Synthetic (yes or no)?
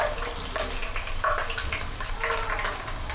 no